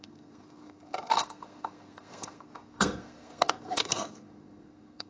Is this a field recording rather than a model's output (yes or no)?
no